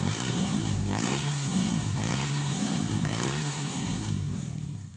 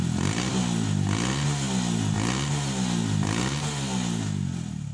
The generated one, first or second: first